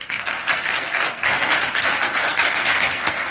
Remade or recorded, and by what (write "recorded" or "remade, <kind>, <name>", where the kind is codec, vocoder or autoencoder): remade, codec, SNAC